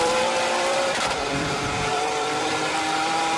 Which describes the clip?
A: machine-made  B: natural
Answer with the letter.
A